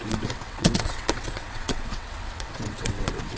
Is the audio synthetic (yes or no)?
yes